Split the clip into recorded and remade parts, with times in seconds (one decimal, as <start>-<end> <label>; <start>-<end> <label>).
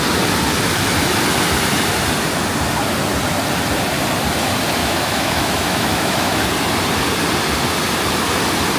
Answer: 0.0-4.8 recorded; 4.8-6.4 remade; 6.4-8.8 recorded